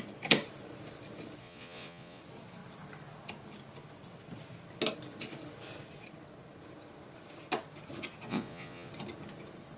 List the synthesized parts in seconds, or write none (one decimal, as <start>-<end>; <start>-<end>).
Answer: 1.4-2.2; 8.3-8.9